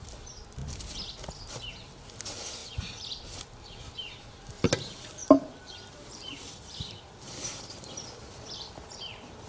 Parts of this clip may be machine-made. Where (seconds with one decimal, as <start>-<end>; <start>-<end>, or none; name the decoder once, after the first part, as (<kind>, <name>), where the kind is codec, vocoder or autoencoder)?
2.6-4.2 (vocoder, BigVGAN v2); 5.2-9.5